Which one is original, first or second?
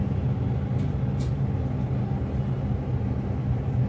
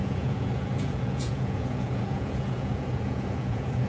first